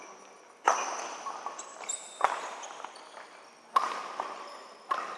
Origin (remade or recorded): recorded